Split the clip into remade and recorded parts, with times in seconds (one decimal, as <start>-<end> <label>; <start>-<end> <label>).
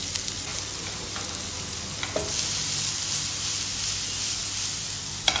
0.0-5.4 recorded